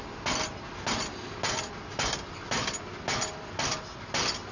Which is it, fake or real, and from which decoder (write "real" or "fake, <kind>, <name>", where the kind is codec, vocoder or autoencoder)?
real